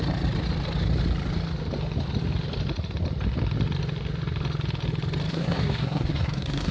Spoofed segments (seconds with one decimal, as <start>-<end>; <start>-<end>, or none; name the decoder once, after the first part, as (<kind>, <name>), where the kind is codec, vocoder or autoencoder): 5.3-6.7 (codec, SNAC)